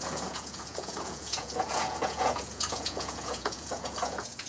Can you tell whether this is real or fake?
fake